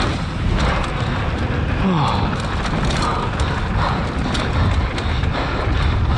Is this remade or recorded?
recorded